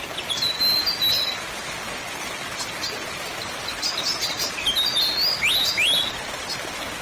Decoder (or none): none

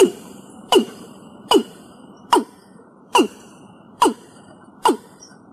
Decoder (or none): vocoder, BigVGAN v2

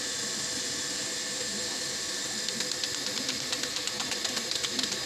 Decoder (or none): none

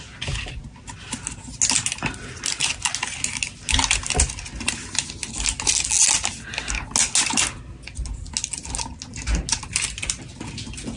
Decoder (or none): none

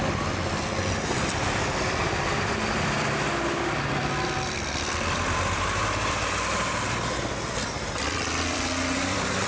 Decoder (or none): vocoder, BigVGAN v2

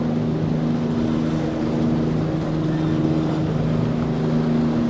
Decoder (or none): none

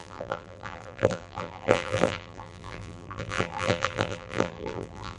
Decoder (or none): vocoder, BigVGAN v2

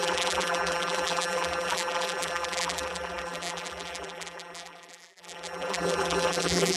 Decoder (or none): vocoder, BigVGAN v2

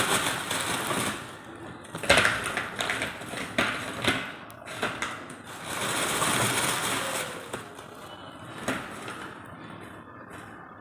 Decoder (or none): none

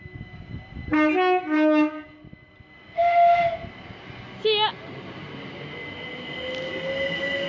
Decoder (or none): none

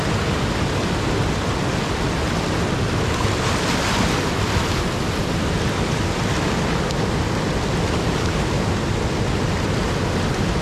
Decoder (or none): none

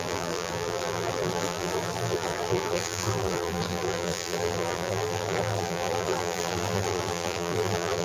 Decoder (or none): vocoder, BigVGAN v2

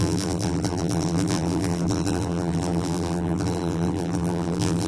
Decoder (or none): vocoder, BigVGAN v2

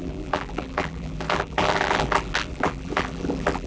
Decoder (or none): vocoder, BigVGAN v2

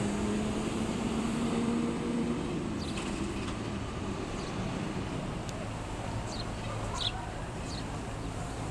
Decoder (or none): vocoder, BigVGAN v2